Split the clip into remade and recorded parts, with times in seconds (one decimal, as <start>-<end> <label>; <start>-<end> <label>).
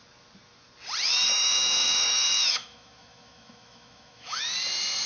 0.0-1.3 recorded; 1.3-4.4 remade; 4.4-5.1 recorded